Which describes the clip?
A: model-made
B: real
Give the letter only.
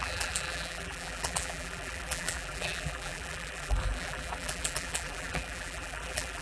A